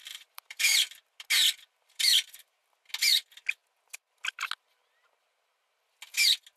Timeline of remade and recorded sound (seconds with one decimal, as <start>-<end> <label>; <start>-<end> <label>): 0.0-0.7 remade; 0.7-1.4 recorded; 1.4-2.8 remade; 2.8-6.6 recorded